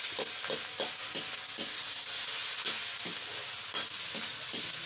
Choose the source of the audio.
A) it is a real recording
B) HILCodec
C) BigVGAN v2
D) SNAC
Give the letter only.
A